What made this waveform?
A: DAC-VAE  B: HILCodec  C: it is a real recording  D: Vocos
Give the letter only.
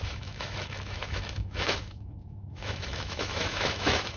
A